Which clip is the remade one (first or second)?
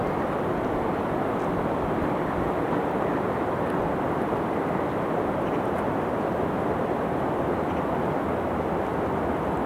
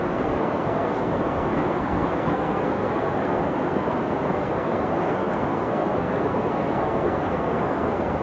second